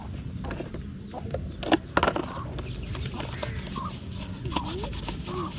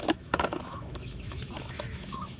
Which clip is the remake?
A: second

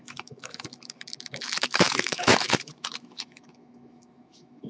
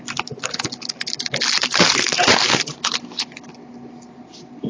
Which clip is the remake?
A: first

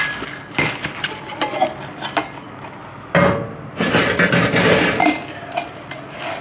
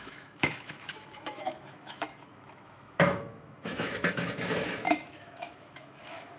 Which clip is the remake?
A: second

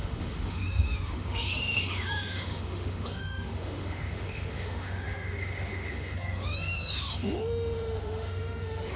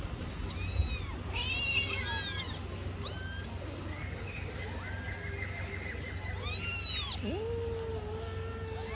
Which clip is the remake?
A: first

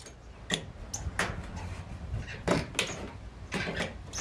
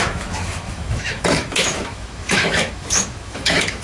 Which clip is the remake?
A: second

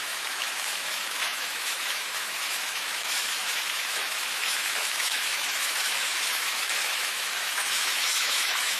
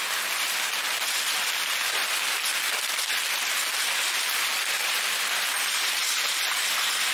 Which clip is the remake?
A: first